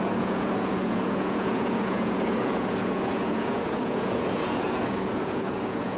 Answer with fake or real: fake